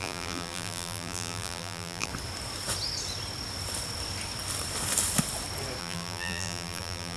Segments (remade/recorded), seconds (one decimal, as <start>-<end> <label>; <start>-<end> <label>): 0.0-2.1 remade; 2.1-5.8 recorded; 5.8-7.2 remade